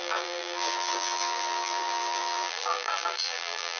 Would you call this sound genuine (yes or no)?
no